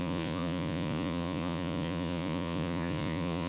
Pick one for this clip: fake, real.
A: fake